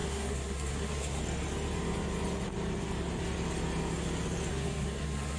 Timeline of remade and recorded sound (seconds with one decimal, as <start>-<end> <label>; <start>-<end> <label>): 0.0-1.2 remade; 1.2-4.5 recorded; 4.5-5.4 remade